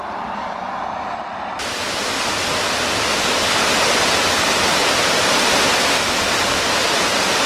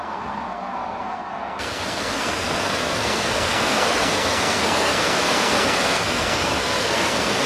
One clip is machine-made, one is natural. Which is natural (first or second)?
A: first